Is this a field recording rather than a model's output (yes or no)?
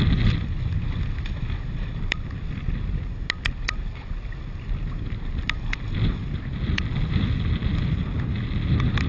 yes